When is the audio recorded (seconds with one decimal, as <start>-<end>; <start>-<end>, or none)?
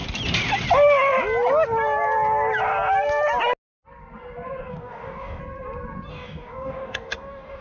0.0-4.6; 5.4-6.1